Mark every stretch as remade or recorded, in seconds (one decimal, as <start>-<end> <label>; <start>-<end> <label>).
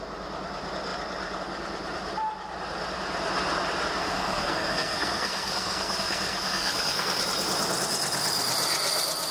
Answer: 0.0-4.0 recorded; 4.0-7.2 remade; 7.2-9.3 recorded